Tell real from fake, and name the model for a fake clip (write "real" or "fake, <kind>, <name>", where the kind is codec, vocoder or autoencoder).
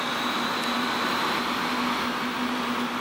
real